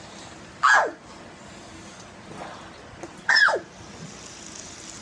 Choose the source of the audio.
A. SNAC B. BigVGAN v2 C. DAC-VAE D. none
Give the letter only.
D